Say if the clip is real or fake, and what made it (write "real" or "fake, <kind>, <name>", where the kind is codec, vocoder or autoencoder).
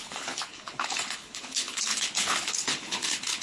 fake, codec, HILCodec